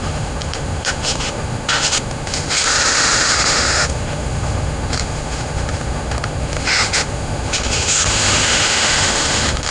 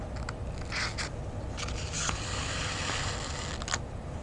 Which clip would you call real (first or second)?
second